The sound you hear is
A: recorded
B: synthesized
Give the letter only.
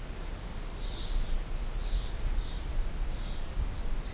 A